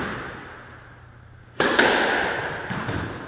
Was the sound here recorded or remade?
recorded